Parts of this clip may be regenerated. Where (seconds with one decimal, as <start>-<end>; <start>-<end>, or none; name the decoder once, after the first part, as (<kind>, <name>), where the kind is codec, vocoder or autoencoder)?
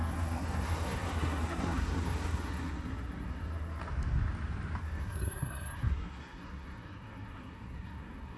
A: 0.0-3.8 (codec, SNAC); 4.8-8.4